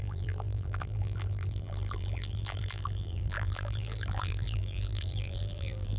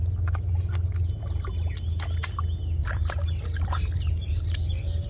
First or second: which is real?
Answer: second